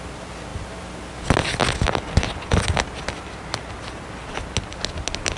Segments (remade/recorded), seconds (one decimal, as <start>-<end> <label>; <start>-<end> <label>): 0.0-5.4 recorded